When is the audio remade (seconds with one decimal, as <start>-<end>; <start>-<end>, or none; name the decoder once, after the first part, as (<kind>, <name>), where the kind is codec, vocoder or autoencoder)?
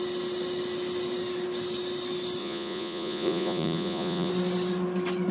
2.4-4.3 (vocoder, Vocos)